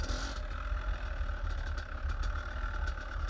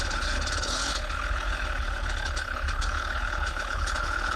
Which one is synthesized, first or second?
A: second